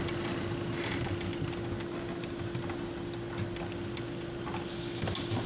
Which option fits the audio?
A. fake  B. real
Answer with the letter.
B